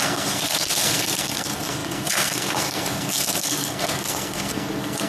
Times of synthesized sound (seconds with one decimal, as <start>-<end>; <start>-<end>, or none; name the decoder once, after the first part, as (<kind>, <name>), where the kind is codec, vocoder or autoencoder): 0.0-5.1 (codec, SNAC)